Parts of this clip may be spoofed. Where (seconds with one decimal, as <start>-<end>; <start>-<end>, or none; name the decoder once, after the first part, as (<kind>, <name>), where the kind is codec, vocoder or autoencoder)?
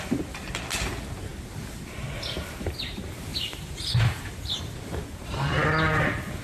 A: 3.3-5.0 (vocoder, BigVGAN v2)